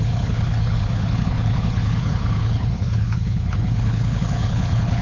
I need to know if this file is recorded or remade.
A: remade